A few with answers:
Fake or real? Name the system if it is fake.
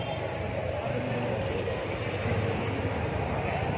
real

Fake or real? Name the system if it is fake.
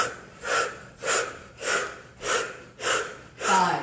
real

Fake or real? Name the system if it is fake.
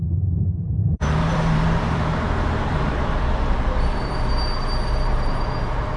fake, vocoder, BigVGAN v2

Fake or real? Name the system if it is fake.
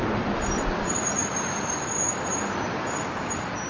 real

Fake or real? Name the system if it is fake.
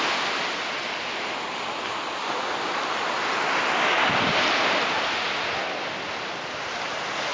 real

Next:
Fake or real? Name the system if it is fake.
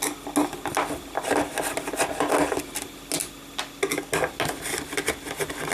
real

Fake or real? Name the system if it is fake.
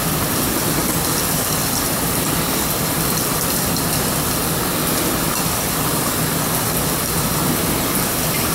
real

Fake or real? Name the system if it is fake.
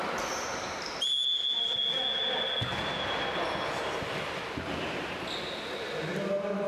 real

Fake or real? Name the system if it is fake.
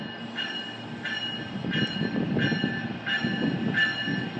real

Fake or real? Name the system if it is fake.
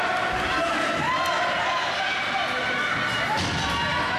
real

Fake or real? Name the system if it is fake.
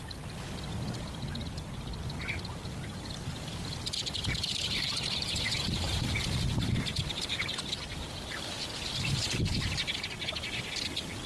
fake, vocoder, BigVGAN v2